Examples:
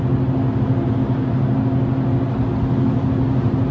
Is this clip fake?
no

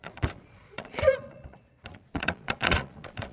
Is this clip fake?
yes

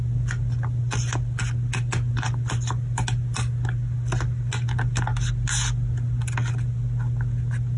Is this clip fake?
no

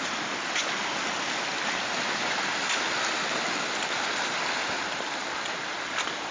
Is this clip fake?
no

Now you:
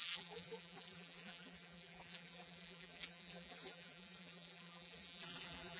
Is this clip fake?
yes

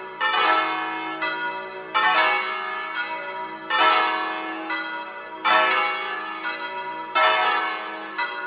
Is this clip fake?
no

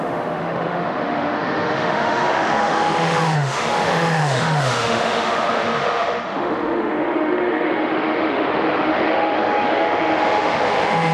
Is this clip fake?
yes